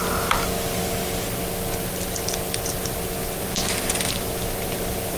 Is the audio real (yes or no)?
yes